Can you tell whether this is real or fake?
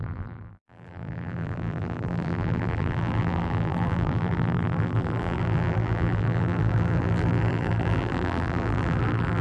fake